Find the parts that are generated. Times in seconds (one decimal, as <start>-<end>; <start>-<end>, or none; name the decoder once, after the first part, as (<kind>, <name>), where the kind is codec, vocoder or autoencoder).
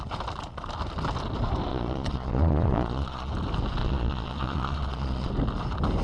1.7-3.3 (vocoder, Vocos); 3.8-5.3